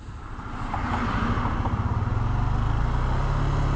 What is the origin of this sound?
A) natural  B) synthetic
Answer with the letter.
A